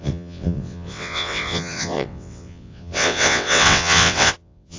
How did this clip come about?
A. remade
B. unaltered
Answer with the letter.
A